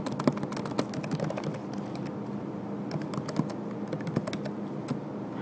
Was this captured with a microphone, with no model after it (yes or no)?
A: yes